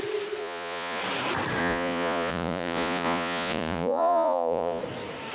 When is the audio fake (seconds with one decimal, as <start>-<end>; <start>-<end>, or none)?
0.4-1.0; 1.6-4.8

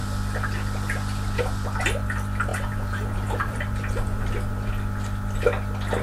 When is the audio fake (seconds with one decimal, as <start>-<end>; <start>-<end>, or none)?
2.5-4.7

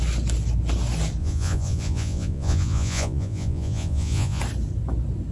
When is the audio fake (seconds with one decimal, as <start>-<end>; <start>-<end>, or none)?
1.2-4.4